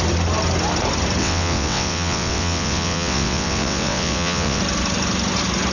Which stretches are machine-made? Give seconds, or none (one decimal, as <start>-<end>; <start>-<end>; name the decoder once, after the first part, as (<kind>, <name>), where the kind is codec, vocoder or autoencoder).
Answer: 1.2-4.6 (vocoder, WaveNeXt)